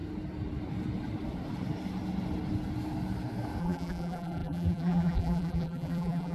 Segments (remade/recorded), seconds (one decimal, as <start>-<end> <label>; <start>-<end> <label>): 0.0-3.6 recorded; 3.6-6.3 remade